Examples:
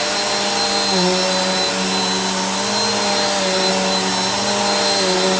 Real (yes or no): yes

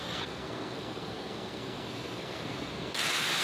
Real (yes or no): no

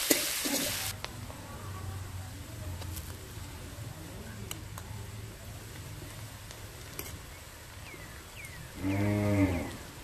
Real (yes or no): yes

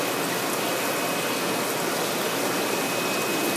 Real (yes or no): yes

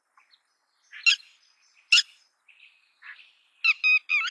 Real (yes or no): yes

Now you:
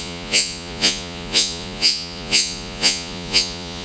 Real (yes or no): no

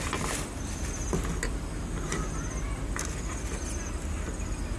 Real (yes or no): yes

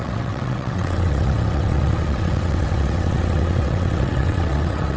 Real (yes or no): no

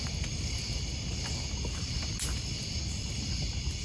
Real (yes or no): yes